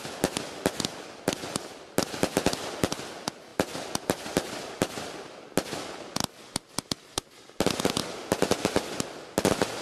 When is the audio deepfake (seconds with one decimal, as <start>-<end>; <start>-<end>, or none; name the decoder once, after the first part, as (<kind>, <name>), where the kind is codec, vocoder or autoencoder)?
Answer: none